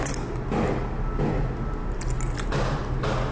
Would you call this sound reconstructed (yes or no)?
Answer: no